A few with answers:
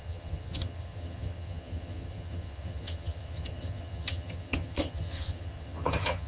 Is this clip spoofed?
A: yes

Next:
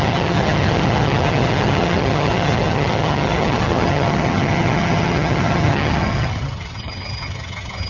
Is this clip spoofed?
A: yes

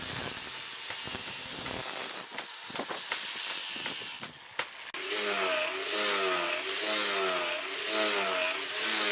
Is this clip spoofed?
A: no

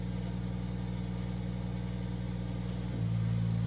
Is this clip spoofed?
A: no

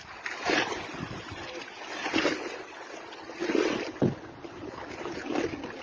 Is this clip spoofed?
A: no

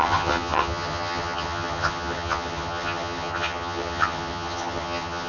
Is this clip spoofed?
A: yes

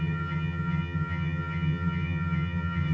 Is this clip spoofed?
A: yes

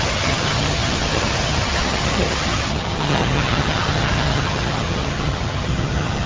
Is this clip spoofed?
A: yes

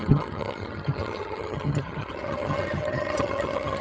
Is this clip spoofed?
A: yes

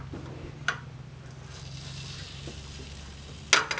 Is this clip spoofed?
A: no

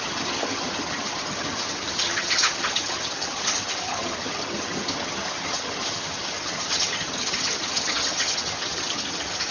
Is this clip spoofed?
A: yes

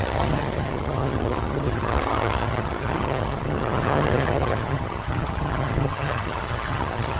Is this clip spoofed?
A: yes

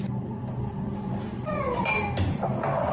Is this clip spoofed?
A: no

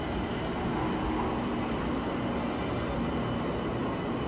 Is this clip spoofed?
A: no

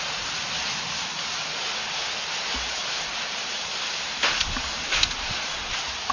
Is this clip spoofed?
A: no